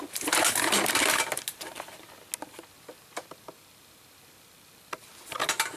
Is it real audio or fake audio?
real